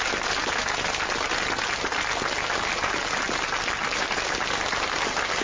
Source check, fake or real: real